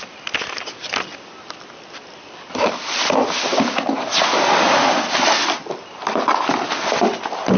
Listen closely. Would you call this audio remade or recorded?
recorded